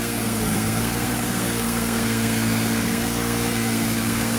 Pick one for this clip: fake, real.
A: fake